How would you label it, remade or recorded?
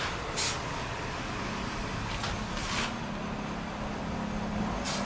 recorded